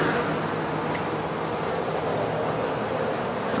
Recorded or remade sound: recorded